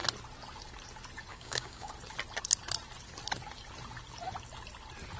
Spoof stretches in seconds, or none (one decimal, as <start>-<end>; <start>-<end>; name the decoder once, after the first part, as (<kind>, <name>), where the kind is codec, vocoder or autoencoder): 1.3-1.9 (codec, DAC)